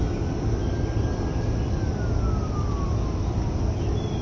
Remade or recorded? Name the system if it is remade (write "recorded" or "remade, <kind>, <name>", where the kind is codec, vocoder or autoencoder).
recorded